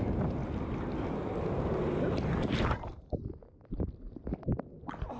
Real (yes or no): yes